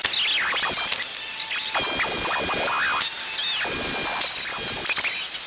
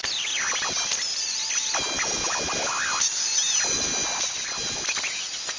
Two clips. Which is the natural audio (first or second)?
first